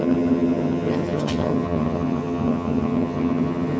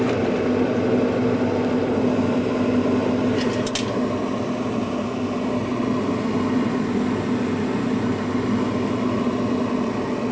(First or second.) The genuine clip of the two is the second